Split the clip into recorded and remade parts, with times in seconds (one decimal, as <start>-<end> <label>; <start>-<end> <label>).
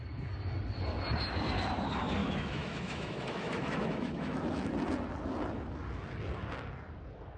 0.0-2.2 recorded; 2.2-4.7 remade; 4.7-7.4 recorded